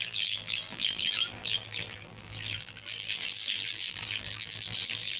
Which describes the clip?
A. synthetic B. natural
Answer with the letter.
A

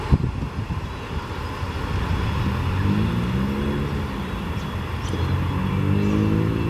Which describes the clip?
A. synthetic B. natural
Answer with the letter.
B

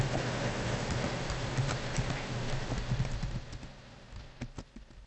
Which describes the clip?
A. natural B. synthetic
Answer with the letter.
A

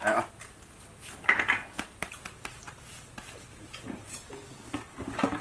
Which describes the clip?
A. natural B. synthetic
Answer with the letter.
A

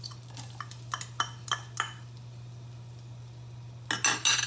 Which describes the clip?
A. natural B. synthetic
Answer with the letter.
A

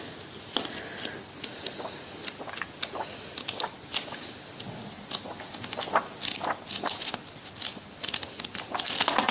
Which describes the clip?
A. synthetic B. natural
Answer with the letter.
B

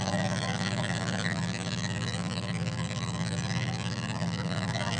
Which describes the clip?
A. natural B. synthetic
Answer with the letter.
B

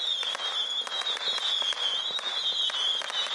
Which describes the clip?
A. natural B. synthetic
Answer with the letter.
A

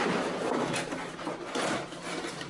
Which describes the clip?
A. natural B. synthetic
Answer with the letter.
B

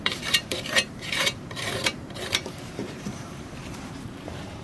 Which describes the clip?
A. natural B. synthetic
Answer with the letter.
B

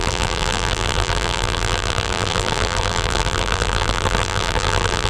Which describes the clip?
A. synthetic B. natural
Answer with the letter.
A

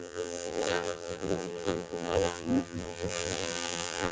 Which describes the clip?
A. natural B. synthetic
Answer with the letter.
B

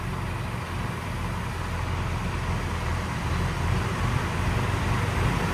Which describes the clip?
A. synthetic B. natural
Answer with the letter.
B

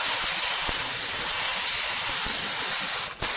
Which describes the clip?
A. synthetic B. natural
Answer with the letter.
B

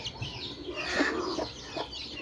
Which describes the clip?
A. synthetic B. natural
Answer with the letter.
B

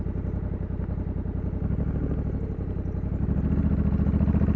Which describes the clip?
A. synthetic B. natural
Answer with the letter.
B